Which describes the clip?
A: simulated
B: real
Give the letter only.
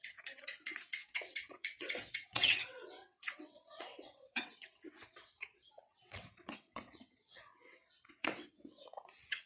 A